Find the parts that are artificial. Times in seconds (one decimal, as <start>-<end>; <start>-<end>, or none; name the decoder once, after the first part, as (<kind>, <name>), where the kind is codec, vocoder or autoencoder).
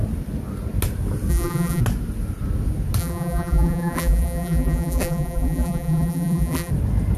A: 1.3-1.8 (vocoder, BigVGAN v2); 3.0-6.7